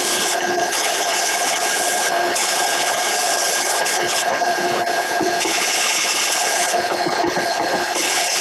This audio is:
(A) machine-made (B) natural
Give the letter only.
A